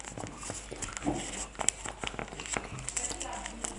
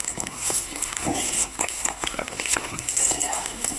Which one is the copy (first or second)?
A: second